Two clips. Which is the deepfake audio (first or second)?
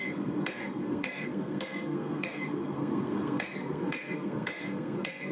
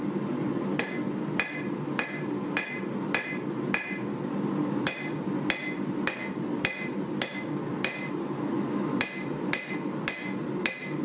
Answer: first